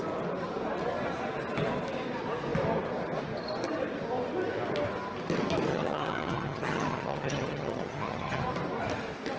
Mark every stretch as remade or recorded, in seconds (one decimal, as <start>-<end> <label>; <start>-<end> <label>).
0.0-5.7 recorded; 5.7-8.4 remade; 8.4-9.4 recorded